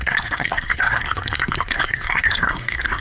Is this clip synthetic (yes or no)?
yes